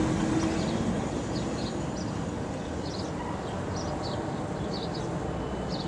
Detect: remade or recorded recorded